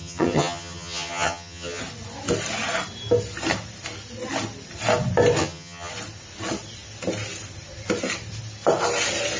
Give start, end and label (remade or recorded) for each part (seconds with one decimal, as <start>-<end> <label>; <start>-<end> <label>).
0.0-1.8 remade; 1.8-5.4 recorded; 5.4-5.9 remade; 5.9-9.4 recorded